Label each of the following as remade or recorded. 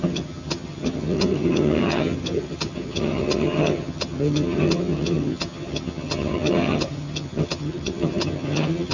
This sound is remade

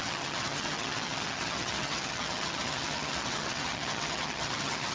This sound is remade